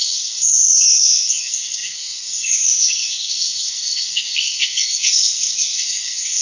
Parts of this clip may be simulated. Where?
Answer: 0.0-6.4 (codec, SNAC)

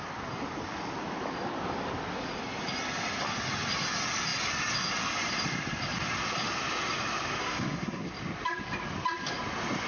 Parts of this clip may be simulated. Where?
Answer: 7.4-8.1 (codec, SNAC)

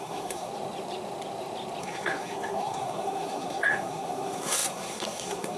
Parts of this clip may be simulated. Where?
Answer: 0.0-0.5 (codec, SNAC); 1.8-5.6

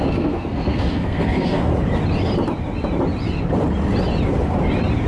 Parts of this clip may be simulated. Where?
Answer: 0.0-1.7 (codec, SNAC)

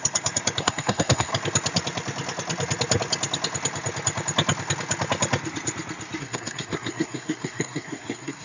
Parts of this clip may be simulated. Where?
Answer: 0.6-1.3 (codec, SNAC); 6.2-8.4

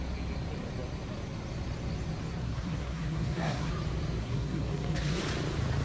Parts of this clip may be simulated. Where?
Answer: 2.4-3.7 (codec, SNAC); 4.2-5.2